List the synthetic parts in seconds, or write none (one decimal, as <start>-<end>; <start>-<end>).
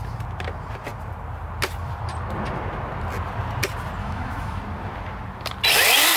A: 4.0-4.6